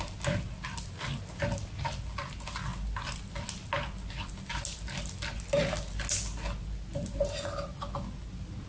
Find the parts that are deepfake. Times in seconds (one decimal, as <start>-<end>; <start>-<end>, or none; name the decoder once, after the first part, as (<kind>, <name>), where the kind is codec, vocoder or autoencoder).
none